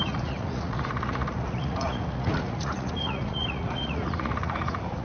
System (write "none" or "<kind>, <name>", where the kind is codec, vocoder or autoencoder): vocoder, Vocos